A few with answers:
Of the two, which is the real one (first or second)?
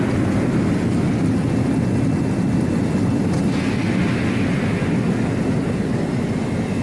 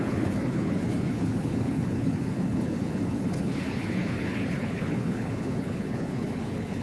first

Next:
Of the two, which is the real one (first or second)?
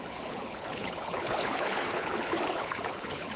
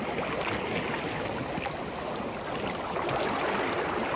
second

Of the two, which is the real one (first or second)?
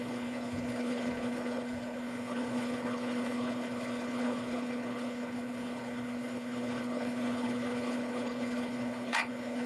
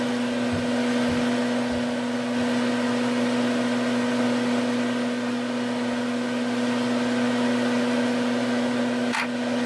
second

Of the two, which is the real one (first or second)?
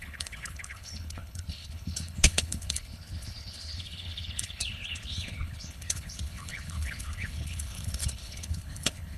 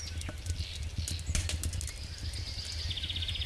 second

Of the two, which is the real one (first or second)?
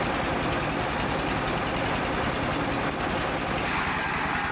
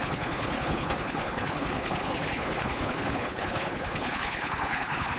first